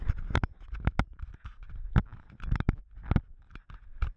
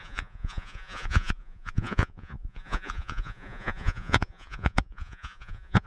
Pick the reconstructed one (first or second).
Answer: second